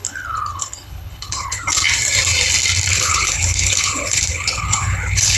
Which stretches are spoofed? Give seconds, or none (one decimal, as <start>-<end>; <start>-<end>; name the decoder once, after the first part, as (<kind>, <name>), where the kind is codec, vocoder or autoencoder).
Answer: 0.0-1.6 (codec, HILCodec); 2.9-5.4